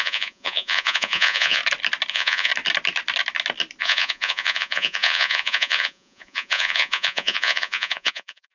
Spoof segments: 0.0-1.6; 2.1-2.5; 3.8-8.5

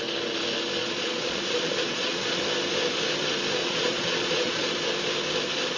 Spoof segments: 0.8-2.4; 3.6-4.9

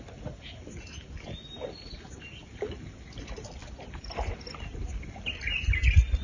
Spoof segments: none

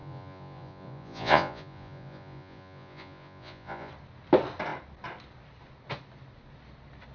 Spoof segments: 0.0-3.9